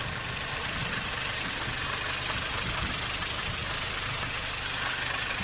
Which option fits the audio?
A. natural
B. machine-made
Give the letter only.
B